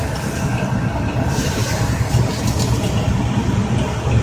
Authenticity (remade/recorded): recorded